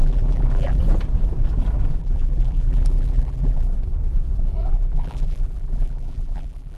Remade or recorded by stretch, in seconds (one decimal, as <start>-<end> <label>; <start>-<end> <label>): 0.0-0.8 remade; 0.8-2.0 recorded; 2.0-3.7 remade; 3.7-4.6 recorded; 4.6-6.8 remade